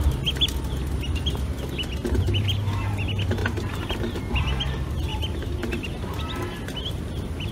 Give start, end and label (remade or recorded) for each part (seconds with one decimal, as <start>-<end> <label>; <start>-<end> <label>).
0.0-2.0 recorded; 2.0-2.9 remade; 2.9-3.4 recorded; 3.4-4.2 remade; 4.2-5.1 recorded; 5.1-6.2 remade; 6.2-7.5 recorded